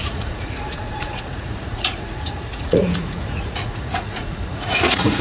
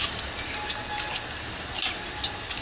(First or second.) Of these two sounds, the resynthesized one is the first